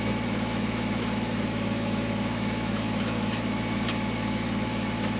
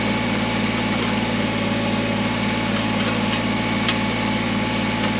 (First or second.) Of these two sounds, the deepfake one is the first